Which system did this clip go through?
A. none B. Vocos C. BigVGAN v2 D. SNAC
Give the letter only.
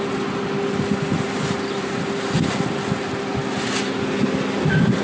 A